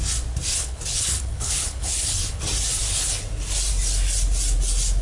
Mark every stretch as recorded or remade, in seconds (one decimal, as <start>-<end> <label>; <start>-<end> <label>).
0.0-0.6 recorded; 0.6-2.4 remade; 2.4-5.0 recorded